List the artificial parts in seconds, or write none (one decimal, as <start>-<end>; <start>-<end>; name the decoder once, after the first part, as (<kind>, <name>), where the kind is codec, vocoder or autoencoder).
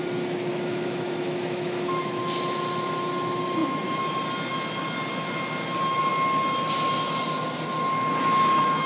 0.5-2.2 (autoencoder, DAC-VAE)